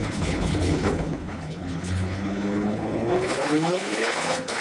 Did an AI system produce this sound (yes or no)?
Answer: yes